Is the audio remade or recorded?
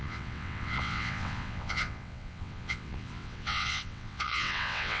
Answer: remade